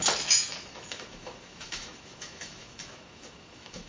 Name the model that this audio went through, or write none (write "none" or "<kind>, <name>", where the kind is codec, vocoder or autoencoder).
autoencoder, DAC-VAE